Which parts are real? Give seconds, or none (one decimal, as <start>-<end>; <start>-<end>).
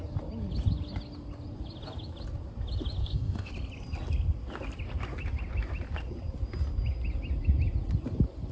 0.0-3.0; 3.5-8.5